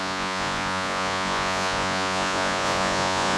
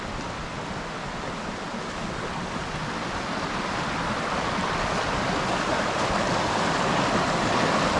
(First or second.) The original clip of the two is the second